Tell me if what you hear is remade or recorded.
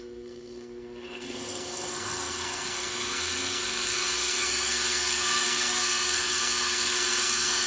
remade